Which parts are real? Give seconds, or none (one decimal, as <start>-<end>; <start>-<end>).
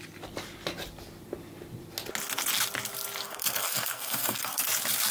0.0-3.2; 4.6-5.1